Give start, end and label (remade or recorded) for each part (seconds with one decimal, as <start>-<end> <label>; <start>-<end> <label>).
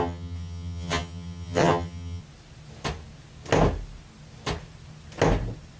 0.0-2.2 remade; 2.2-5.8 recorded